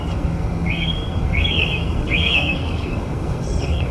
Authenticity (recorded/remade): remade